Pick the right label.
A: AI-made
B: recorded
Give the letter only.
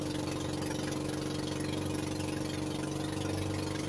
B